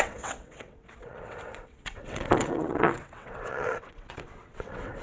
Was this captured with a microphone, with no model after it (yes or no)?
no